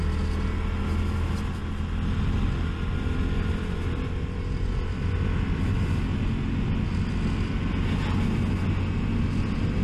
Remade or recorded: recorded